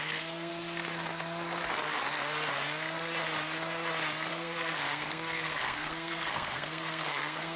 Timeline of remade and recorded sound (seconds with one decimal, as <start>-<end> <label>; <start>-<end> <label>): 0.0-0.5 remade; 0.5-4.3 recorded; 4.3-7.6 remade